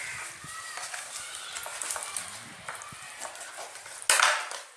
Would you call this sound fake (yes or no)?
no